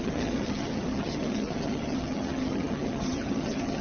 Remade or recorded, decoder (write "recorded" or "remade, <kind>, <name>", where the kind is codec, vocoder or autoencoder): remade, vocoder, HiFi-GAN